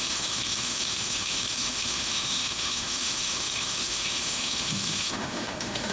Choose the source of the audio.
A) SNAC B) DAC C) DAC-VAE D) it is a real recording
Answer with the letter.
C